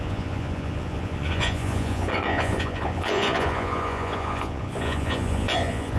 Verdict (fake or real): fake